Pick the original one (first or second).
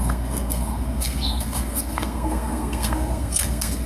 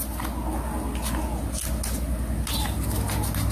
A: second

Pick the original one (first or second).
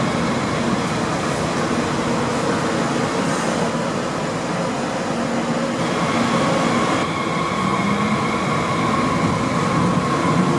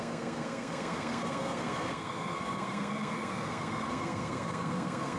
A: first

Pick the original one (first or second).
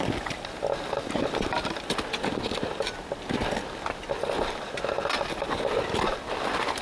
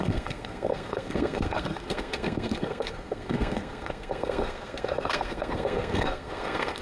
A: first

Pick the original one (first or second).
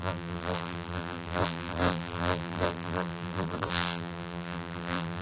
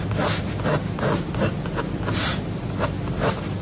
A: second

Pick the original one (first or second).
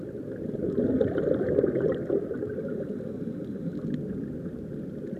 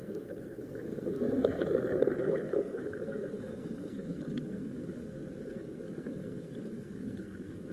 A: first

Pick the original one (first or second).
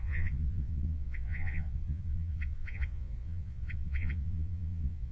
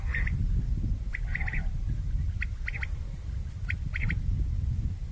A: second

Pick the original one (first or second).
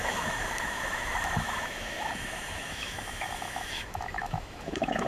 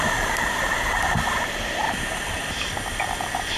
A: second